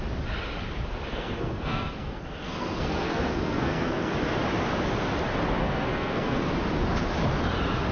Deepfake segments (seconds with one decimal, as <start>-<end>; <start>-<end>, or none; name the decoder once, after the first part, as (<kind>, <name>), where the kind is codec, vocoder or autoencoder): 1.1-4.1 (codec, SNAC); 5.6-6.5